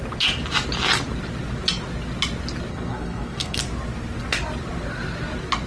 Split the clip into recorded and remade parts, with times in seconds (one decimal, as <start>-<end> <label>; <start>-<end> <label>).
0.0-2.7 recorded; 2.7-3.6 remade; 3.6-5.7 recorded